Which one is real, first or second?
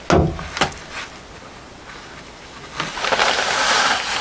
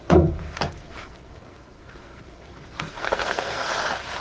first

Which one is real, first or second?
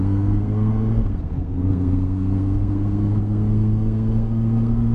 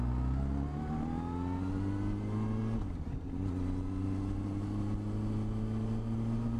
second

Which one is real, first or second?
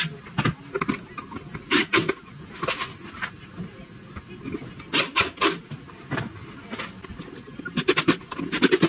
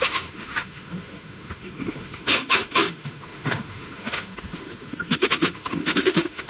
first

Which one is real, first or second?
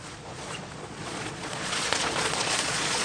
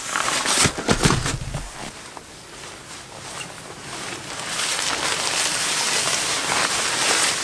second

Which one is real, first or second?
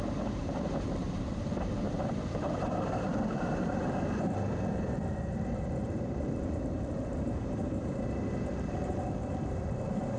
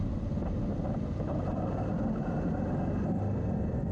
second